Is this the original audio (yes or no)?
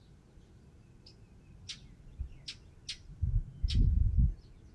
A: yes